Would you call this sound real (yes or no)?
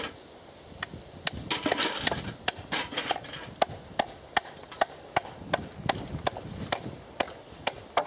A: yes